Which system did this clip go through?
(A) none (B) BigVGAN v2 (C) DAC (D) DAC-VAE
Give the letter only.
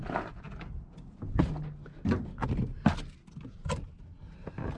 A